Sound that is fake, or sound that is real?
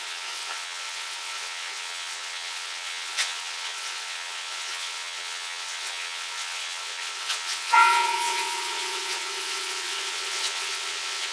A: fake